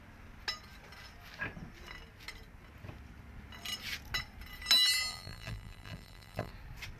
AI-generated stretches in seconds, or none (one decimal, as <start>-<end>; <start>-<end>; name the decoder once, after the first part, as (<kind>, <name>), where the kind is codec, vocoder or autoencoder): 5.1-6.5 (vocoder, BigVGAN v2)